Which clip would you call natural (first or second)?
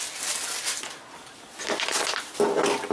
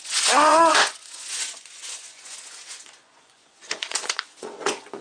first